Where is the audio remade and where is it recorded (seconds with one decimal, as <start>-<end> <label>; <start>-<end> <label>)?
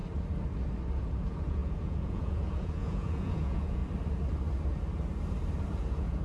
0.0-1.0 recorded; 1.0-3.8 remade; 3.8-5.8 recorded; 5.8-6.2 remade